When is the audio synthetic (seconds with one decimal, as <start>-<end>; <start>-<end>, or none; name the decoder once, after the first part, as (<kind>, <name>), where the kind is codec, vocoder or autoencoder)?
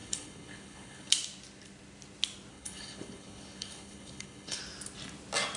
0.0-1.1 (codec, HILCodec); 2.5-4.6